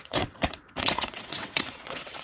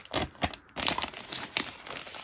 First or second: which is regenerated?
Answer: first